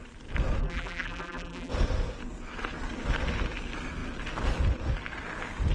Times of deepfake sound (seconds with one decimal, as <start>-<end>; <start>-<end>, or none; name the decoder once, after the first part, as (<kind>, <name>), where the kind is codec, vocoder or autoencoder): 0.6-1.7 (vocoder, BigVGAN v2)